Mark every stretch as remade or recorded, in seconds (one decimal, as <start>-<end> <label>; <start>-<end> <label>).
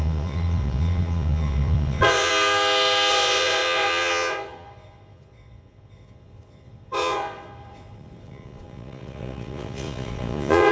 0.0-2.3 remade; 2.3-3.1 recorded; 3.1-10.7 remade